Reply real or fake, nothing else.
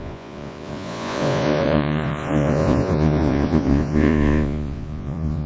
fake